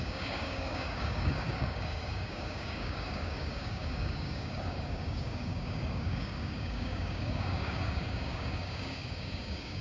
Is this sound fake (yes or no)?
yes